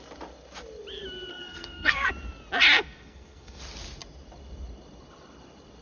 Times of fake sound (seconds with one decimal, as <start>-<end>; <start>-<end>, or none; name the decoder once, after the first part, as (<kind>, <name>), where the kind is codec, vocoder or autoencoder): 1.3-2.1 (codec, SNAC); 2.8-3.6